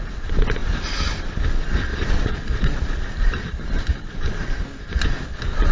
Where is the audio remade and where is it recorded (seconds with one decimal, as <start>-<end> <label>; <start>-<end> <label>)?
0.0-1.9 recorded; 1.9-2.8 remade; 2.8-5.7 recorded